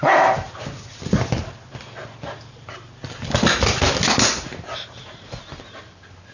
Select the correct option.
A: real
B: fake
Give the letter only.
A